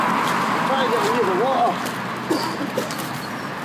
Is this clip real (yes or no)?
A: yes